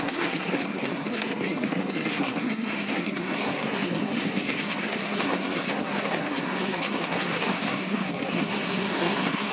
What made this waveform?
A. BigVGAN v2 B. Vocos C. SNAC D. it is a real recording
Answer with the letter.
C